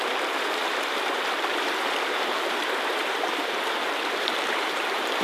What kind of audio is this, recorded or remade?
remade